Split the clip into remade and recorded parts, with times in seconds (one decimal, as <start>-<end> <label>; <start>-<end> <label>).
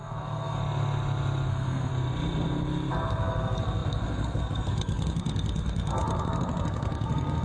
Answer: 0.0-0.6 remade; 0.6-1.5 recorded; 1.5-1.9 remade; 1.9-2.9 recorded; 2.9-7.4 remade